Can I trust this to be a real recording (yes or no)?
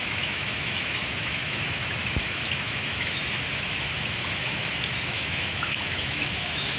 no